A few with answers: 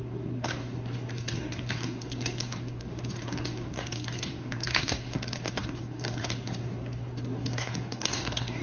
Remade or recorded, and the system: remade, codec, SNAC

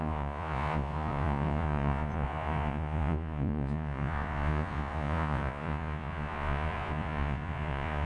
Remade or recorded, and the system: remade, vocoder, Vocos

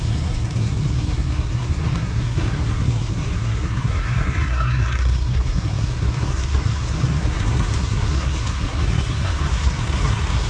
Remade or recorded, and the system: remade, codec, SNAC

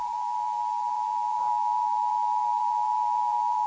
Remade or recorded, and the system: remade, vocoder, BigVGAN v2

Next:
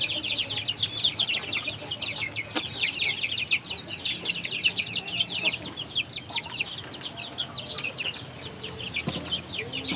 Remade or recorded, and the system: recorded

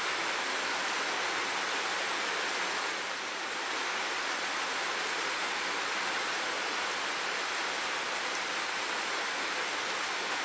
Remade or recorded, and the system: recorded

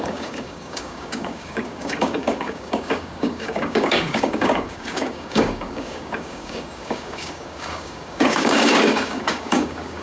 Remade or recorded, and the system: remade, codec, DAC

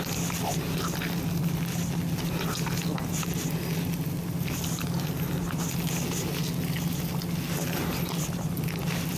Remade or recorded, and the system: recorded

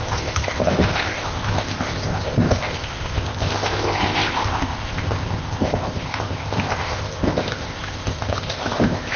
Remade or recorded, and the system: remade, codec, ZipCodec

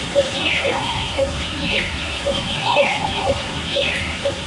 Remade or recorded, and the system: remade, codec, SNAC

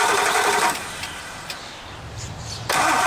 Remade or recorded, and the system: remade, vocoder, BigVGAN v2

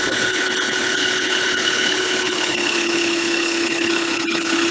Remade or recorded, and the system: remade, codec, HILCodec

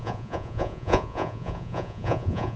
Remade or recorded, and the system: remade, vocoder, Vocos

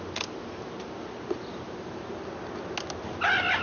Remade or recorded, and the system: recorded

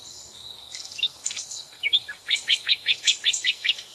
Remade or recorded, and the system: remade, codec, SNAC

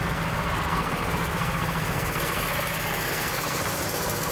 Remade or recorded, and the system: remade, codec, SNAC